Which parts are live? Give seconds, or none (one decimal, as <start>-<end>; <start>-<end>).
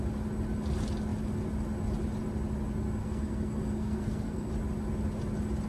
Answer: 0.0-3.0; 4.5-5.7